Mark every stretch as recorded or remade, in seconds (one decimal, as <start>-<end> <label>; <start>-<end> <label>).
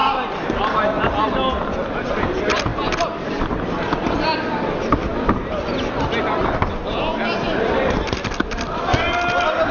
0.0-9.7 recorded